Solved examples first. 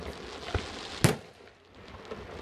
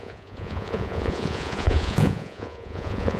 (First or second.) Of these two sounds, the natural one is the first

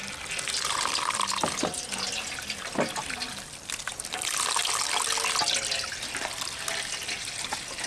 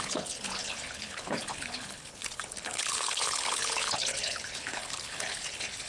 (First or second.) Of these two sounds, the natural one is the first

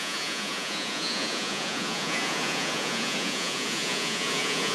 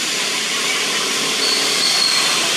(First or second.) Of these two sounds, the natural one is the second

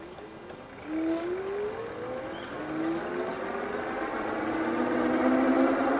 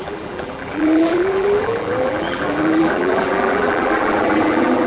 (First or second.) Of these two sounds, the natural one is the first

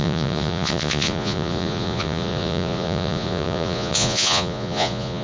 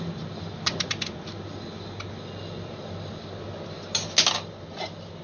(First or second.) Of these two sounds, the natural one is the second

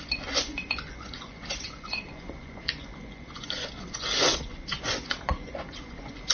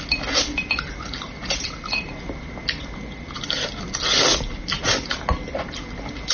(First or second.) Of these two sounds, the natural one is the second